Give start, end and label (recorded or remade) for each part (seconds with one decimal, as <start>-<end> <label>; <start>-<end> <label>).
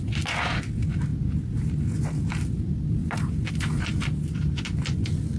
0.0-5.4 recorded